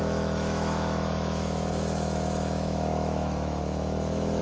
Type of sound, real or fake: fake